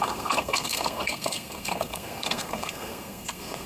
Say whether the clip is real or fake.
fake